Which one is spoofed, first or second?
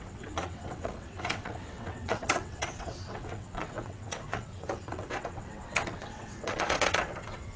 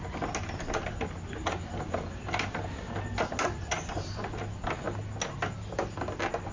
first